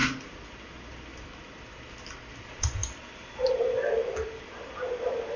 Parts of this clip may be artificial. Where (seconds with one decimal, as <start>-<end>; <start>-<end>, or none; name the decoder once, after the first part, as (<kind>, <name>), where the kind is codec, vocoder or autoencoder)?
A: none